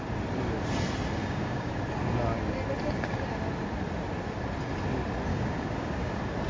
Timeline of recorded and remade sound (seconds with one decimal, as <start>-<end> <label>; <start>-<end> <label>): 0.0-1.2 recorded; 1.2-1.7 remade; 1.7-5.3 recorded; 5.3-6.1 remade; 6.1-6.5 recorded